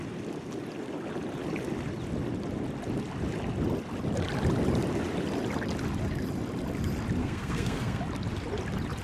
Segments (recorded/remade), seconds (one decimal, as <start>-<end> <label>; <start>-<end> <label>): 0.0-7.2 recorded; 7.2-8.0 remade; 8.0-9.0 recorded